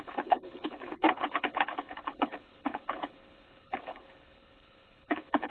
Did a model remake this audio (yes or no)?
yes